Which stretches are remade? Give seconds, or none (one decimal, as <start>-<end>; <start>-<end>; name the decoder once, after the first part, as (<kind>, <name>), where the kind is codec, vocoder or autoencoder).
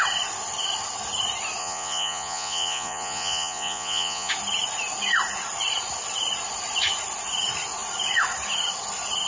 1.6-4.3 (vocoder, Vocos)